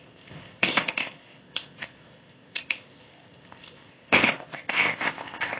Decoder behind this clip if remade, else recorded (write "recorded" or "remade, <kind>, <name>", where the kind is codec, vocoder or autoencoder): remade, codec, ZipCodec